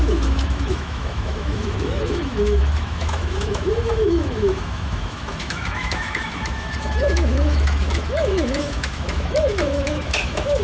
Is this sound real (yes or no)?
no